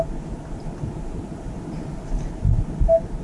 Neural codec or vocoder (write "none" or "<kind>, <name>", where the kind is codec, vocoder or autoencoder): none